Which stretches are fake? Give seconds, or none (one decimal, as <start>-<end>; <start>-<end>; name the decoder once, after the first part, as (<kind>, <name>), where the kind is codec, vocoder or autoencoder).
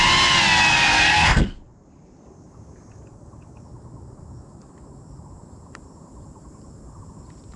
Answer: 0.7-1.6 (codec, SNAC)